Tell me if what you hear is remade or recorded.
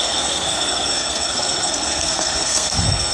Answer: remade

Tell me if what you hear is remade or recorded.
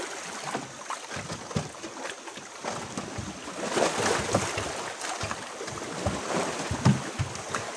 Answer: recorded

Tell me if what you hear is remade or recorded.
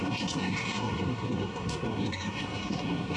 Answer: remade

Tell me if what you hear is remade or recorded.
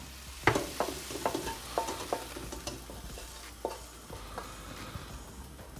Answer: recorded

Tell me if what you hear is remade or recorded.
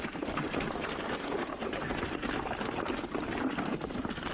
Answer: recorded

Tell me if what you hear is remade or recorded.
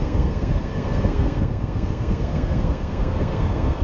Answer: remade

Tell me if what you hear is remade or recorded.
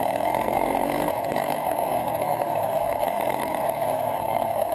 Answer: remade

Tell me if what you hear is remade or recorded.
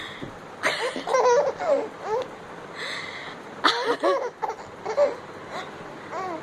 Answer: recorded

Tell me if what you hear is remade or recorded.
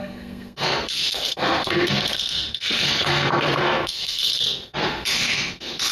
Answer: remade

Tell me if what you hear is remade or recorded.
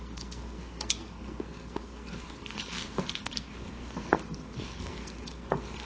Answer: remade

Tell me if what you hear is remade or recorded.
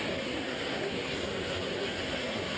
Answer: remade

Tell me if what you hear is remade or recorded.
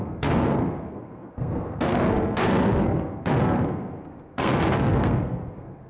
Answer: remade